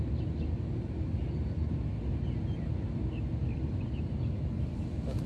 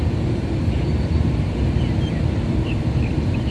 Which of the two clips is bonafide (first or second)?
first